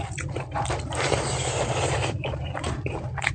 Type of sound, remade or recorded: remade